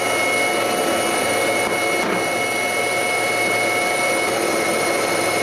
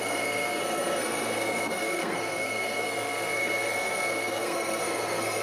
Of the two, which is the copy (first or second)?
second